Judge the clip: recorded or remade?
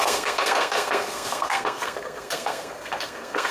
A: remade